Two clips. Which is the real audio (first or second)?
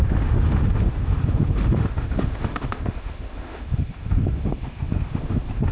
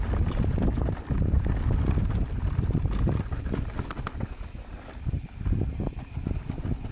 second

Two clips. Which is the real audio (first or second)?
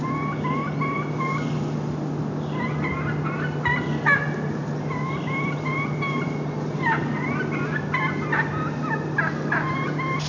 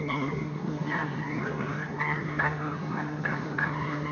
first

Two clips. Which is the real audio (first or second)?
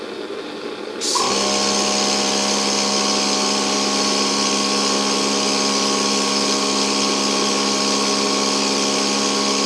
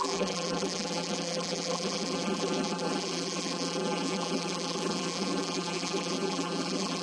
first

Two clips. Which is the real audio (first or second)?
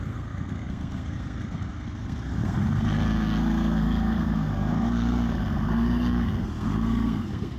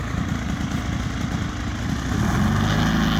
second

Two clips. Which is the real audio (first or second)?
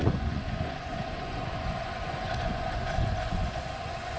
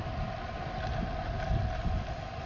second